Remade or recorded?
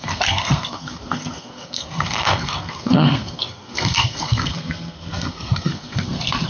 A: remade